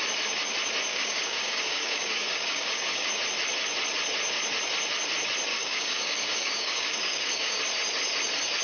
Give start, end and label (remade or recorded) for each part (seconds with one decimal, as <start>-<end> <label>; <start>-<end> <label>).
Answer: 0.0-0.9 recorded; 0.9-3.1 remade; 3.1-5.5 recorded; 5.5-7.6 remade; 7.6-8.6 recorded